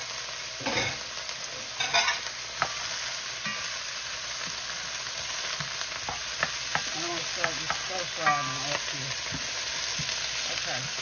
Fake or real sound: real